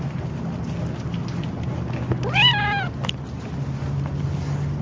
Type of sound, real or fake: real